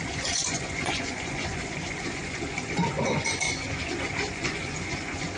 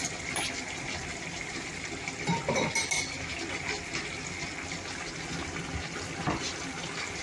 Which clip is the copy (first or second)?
first